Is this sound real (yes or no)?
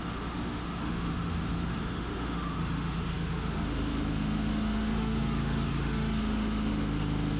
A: no